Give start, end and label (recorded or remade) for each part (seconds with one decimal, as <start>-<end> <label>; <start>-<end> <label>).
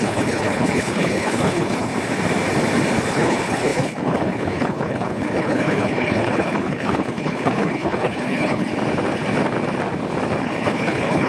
0.0-1.9 remade; 1.9-3.1 recorded; 3.1-8.7 remade; 8.7-10.4 recorded; 10.4-11.3 remade